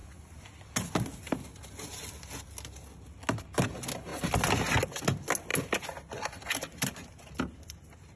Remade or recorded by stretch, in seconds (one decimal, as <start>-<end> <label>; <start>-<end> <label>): 0.0-8.2 recorded

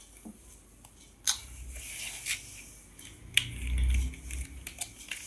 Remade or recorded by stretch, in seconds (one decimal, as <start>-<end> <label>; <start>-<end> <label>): 0.0-5.3 recorded

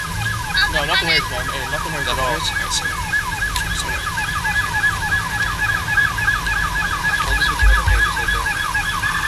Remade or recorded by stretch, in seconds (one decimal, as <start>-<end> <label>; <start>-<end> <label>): 0.0-9.3 recorded

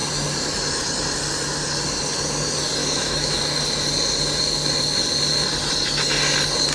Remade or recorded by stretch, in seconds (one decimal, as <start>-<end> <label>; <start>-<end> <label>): 0.0-2.8 recorded; 2.8-3.4 remade; 3.4-6.7 recorded

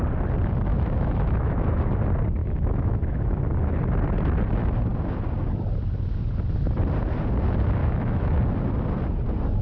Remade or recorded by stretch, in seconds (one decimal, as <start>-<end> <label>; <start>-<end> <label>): 0.0-0.7 recorded; 0.7-1.9 remade; 1.9-2.4 recorded; 2.4-3.4 remade; 3.4-7.8 recorded; 7.8-8.4 remade; 8.4-9.6 recorded